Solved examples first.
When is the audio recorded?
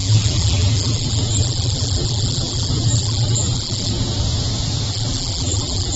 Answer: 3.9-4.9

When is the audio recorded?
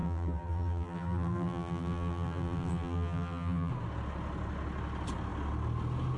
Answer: 3.7-6.2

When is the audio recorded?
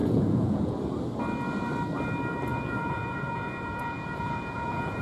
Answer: 0.7-2.5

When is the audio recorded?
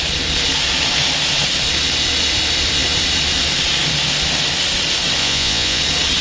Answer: 0.0-5.2; 5.8-6.2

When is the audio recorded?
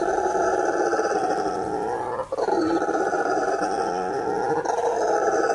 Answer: 0.0-5.5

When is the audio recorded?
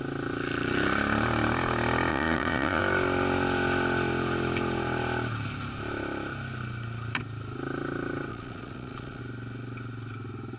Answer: 0.0-2.1; 2.8-8.3; 9.2-10.6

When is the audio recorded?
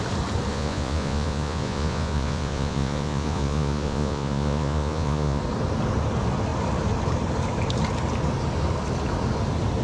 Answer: 0.0-0.5; 5.4-9.8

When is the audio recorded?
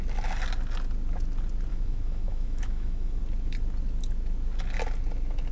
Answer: 0.0-1.7; 3.2-5.5